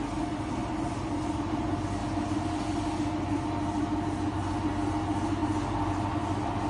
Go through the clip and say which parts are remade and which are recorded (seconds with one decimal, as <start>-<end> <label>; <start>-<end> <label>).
0.0-0.6 recorded; 0.6-1.4 remade; 1.4-6.7 recorded

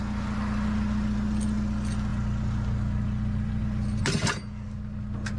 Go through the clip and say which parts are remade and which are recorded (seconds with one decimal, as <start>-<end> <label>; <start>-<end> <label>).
0.0-5.4 recorded

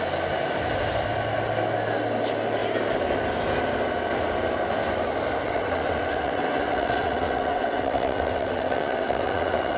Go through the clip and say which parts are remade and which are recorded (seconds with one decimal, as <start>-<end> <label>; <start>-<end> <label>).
0.0-5.4 recorded; 5.4-9.8 remade

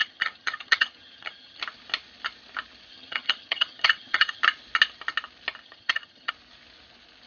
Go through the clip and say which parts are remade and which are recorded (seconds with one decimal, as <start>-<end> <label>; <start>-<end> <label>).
0.0-1.6 remade; 1.6-2.9 recorded; 2.9-4.4 remade; 4.4-5.6 recorded; 5.6-6.3 remade; 6.3-7.3 recorded

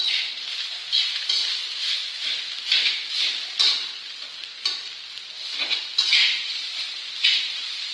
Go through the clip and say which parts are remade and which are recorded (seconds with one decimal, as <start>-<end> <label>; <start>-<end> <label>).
0.0-0.8 remade; 0.8-1.6 recorded; 1.6-2.0 remade; 2.0-5.8 recorded; 5.8-7.9 remade

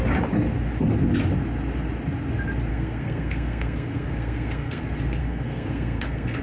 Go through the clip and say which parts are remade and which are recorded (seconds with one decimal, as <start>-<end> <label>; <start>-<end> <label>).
0.0-2.7 recorded; 2.7-4.8 remade; 4.8-5.2 recorded; 5.2-6.4 remade